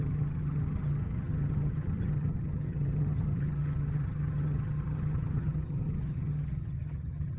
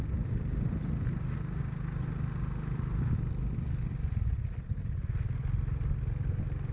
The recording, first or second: second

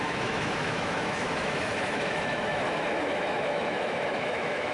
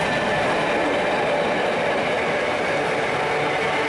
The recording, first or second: second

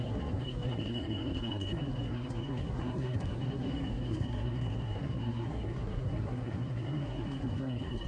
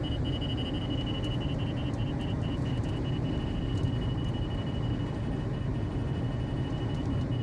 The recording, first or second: second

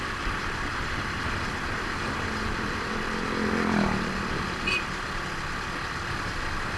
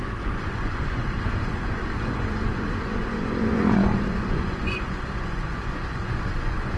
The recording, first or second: first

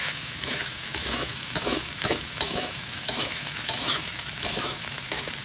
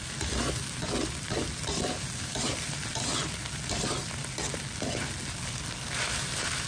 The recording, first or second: second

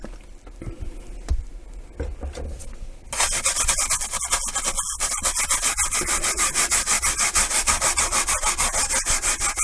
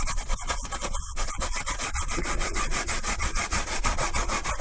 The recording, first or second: first